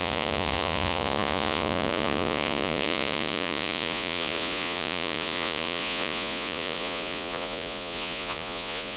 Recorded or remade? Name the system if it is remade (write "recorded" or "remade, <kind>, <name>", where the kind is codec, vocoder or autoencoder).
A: remade, vocoder, Vocos